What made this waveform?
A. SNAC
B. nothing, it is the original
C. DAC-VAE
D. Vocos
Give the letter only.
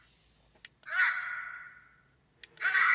B